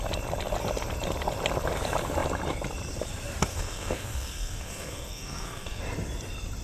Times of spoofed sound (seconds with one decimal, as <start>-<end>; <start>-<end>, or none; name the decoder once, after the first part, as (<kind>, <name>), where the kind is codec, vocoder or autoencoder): 3.5-5.8 (codec, SNAC)